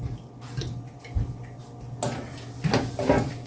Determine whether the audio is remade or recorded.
recorded